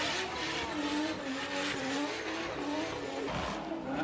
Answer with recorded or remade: recorded